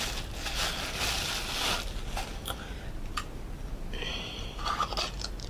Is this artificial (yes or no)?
no